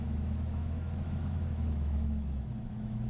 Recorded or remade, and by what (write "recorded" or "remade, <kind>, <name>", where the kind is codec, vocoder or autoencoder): remade, autoencoder, DAC-VAE